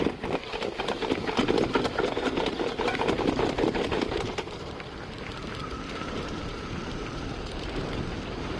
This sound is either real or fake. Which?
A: real